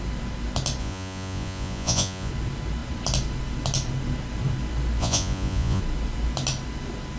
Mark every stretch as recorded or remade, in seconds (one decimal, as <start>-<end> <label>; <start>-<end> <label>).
0.0-0.8 recorded; 0.8-2.3 remade; 2.3-5.0 recorded; 5.0-5.8 remade; 5.8-7.2 recorded